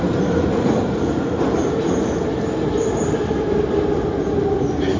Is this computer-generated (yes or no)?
no